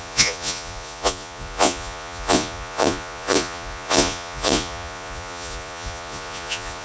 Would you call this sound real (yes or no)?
no